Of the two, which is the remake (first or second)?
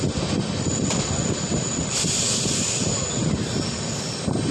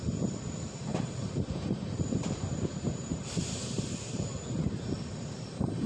second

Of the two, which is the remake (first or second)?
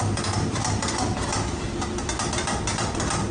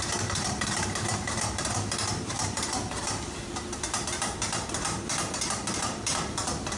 second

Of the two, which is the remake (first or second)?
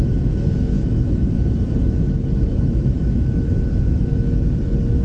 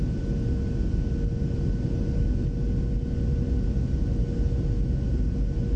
first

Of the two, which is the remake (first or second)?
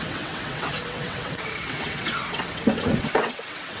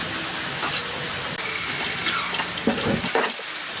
first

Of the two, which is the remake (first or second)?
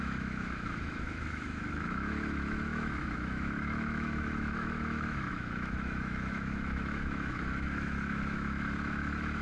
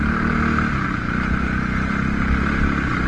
first